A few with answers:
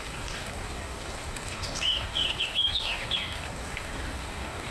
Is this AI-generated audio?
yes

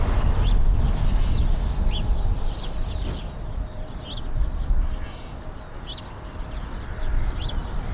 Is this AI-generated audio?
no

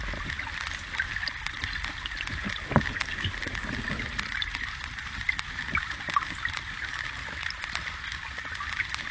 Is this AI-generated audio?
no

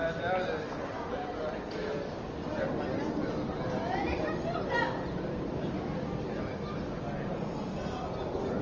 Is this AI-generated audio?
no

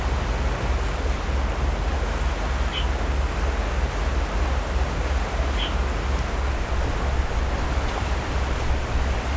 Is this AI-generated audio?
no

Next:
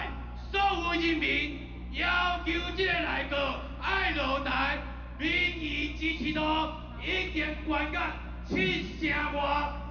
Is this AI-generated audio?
no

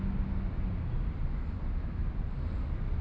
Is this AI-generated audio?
no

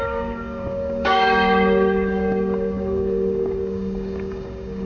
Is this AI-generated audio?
yes